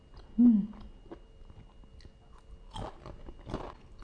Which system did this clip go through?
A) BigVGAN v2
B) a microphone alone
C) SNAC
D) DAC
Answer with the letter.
B